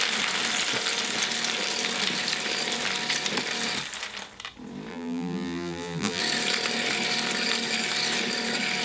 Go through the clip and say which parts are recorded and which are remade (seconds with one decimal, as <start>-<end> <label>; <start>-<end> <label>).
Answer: 0.0-4.9 recorded; 4.9-6.2 remade; 6.2-8.8 recorded